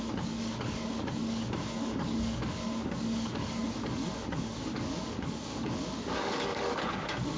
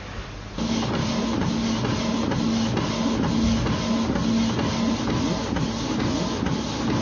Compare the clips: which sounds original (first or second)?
second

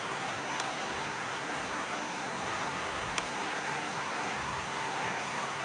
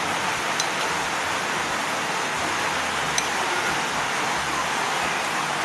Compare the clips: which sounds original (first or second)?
second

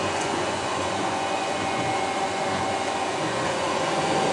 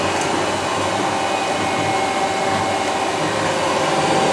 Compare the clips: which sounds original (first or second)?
second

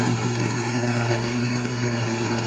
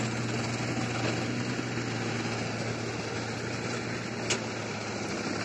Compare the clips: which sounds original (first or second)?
second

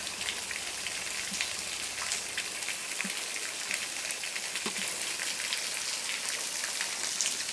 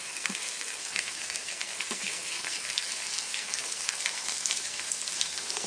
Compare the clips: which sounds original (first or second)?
first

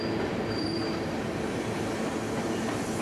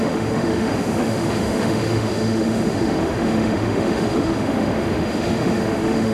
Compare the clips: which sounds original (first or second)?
first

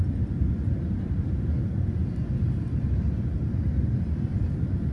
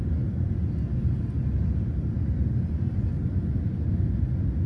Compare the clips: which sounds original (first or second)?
second